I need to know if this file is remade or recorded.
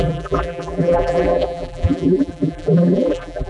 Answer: remade